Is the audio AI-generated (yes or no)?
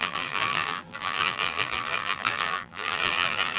yes